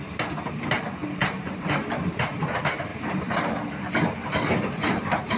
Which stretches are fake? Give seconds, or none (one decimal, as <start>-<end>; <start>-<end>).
1.2-2.5; 2.9-5.4

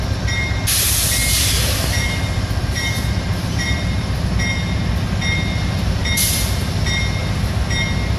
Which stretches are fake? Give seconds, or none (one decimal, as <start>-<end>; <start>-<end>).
1.2-4.3; 6.0-6.5

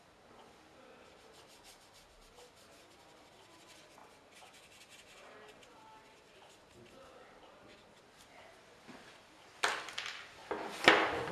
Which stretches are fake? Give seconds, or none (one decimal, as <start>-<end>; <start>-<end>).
none

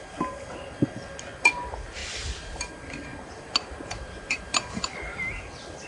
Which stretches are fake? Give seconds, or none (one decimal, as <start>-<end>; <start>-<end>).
2.0-2.7; 3.1-5.4

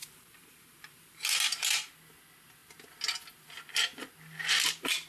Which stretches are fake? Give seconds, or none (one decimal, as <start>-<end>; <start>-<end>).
0.0-1.7

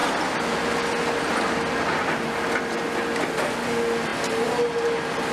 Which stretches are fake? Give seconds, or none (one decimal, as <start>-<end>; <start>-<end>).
4.1-5.3

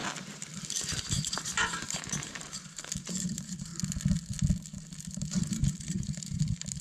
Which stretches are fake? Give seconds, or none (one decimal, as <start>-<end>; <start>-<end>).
0.0-3.7; 5.4-6.8

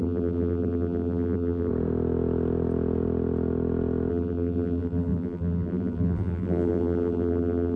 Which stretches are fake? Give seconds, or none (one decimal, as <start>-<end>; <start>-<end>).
0.0-1.7; 4.1-7.8